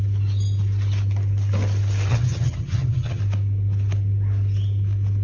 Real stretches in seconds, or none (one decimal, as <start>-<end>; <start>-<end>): 0.0-2.1; 3.2-5.2